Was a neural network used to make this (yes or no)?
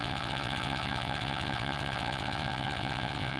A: yes